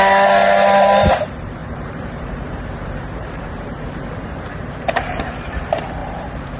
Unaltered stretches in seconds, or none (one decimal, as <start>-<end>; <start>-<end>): 0.0-1.6; 5.6-6.0